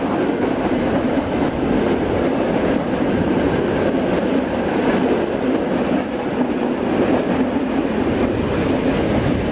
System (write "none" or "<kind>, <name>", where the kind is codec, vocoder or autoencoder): none